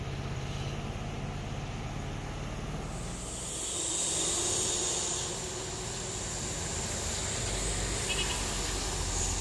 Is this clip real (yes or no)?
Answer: yes